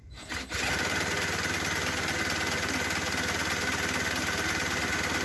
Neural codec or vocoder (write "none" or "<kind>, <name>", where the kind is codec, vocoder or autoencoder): none